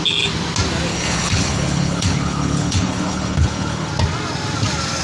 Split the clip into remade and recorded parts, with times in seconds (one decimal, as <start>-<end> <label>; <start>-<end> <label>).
0.0-0.9 recorded; 0.9-3.9 remade; 3.9-5.0 recorded